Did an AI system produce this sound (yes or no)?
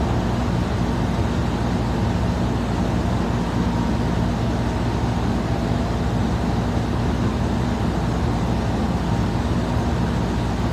no